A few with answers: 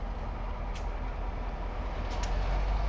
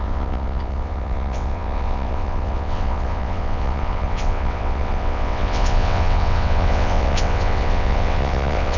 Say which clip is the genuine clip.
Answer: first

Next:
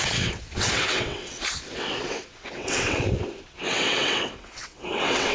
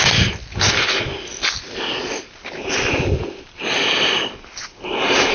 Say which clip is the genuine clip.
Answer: second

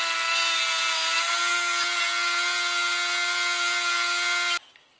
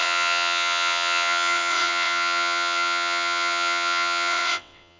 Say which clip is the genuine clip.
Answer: first